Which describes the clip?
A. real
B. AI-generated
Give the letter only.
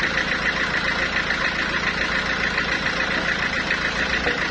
A